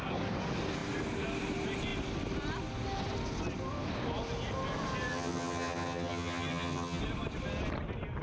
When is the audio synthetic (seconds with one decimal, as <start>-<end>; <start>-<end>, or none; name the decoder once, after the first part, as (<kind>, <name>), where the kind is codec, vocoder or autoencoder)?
5.1-7.0 (vocoder, HiFi-GAN)